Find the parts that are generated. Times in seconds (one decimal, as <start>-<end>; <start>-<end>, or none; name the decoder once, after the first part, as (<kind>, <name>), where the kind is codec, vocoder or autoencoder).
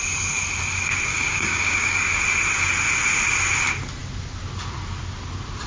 1.1-2.0 (codec, DAC)